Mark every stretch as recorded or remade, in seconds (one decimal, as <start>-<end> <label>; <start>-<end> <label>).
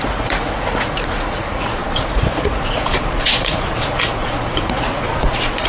0.0-5.7 remade